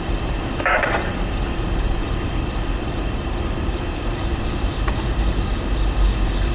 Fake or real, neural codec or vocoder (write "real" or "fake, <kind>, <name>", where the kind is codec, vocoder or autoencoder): fake, vocoder, BigVGAN v2